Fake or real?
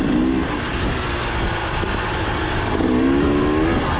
real